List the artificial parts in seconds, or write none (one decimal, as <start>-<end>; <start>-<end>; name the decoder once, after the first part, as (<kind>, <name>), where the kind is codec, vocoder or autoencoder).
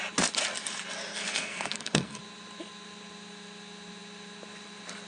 1.1-2.2 (codec, SNAC)